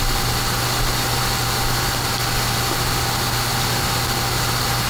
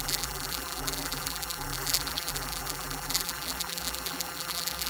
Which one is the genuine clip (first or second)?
first